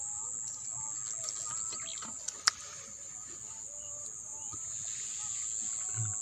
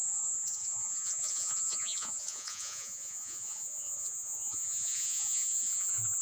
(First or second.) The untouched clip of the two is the first